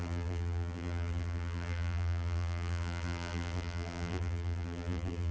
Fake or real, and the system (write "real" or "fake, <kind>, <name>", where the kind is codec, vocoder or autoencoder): fake, vocoder, BigVGAN v2